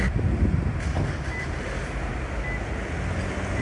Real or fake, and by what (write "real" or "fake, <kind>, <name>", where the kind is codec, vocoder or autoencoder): real